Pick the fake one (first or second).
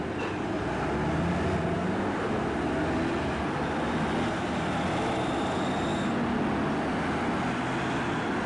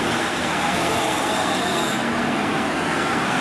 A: second